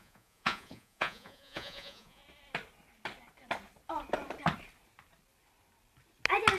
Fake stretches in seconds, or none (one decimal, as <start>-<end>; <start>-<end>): 0.0-2.2